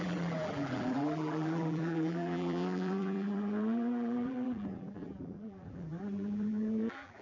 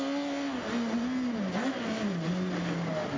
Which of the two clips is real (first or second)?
second